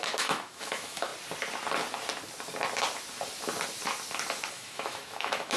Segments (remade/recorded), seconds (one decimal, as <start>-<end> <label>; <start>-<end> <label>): 0.0-1.1 remade; 1.1-4.5 recorded; 4.5-5.6 remade